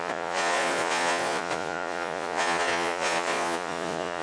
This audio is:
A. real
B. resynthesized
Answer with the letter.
B